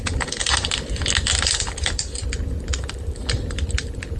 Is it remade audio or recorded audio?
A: remade